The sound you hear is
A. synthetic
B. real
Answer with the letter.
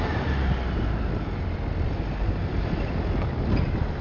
B